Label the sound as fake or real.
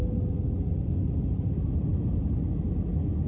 real